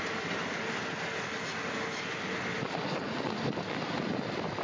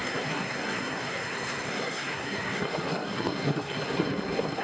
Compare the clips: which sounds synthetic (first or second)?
second